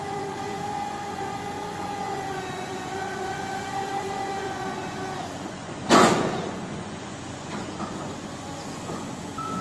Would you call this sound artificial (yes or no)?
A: yes